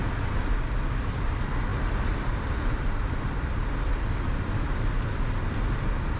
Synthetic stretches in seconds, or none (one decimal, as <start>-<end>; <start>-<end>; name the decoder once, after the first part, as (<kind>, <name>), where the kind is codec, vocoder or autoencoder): 1.0-3.6 (vocoder, BigVGAN v2)